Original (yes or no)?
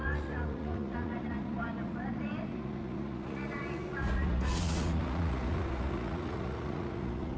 no